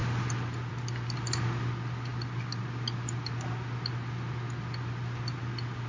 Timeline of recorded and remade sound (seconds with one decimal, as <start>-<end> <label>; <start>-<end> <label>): 0.0-5.9 recorded